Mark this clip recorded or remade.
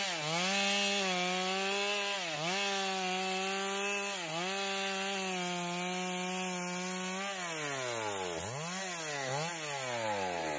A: recorded